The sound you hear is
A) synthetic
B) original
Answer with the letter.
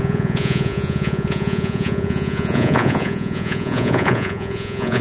A